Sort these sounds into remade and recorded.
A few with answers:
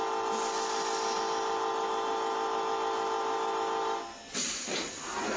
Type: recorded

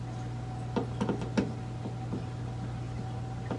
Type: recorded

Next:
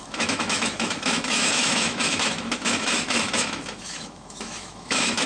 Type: remade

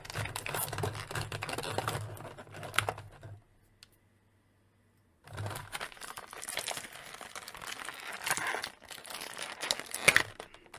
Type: recorded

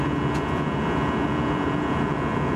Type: remade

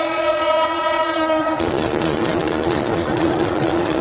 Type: remade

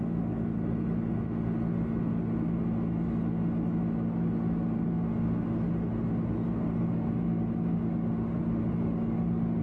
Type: recorded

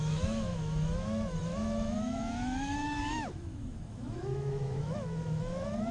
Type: remade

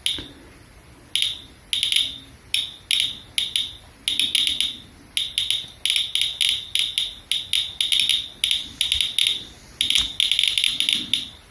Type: recorded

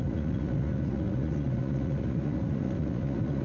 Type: remade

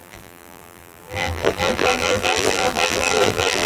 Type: remade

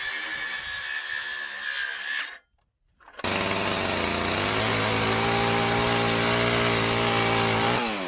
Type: recorded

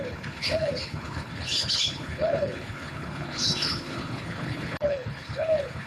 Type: remade